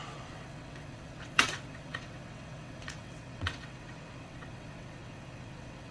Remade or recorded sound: remade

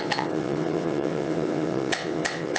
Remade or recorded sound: remade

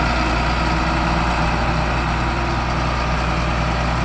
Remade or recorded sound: recorded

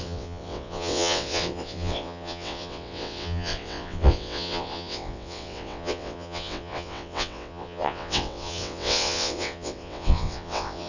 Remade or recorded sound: remade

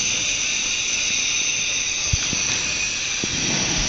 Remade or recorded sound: recorded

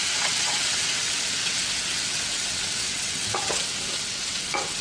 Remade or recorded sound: remade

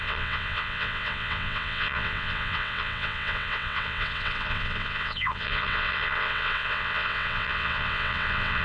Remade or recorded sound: remade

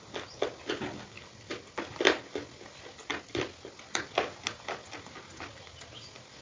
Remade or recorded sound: recorded